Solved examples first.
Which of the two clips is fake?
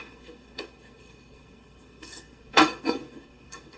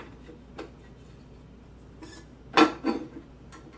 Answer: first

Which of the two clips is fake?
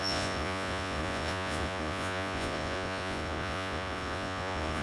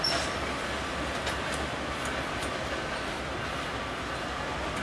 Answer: first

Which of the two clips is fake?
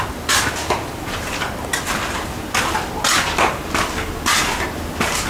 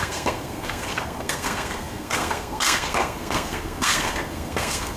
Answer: second